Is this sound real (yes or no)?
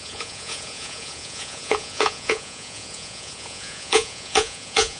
no